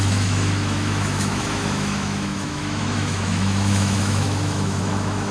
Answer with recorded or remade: remade